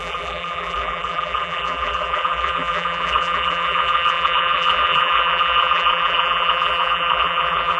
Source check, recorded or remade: remade